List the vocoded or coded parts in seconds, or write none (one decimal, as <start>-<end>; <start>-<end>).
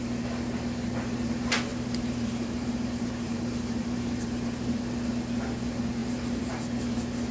1.7-4.8; 6.0-6.6